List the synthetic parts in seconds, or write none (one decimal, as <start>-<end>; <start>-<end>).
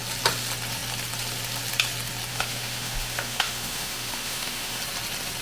2.3-4.8